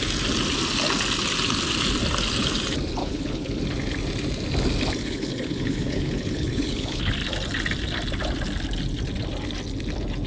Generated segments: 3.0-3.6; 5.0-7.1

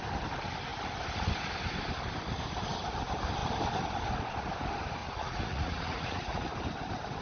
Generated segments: 5.0-6.5

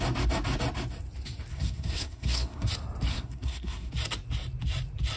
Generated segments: 1.5-2.7; 3.1-3.9

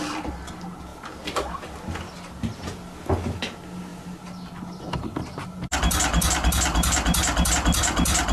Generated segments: none

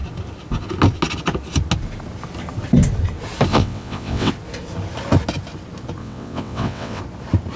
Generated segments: 3.5-4.3; 6.0-7.0

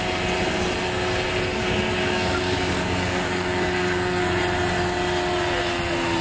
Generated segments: 1.5-4.2

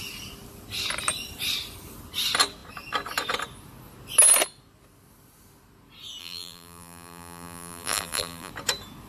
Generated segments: 6.2-8.5